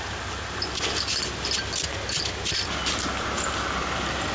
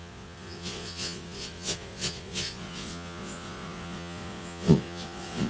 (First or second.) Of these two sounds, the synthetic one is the second